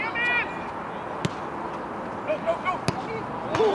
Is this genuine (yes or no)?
yes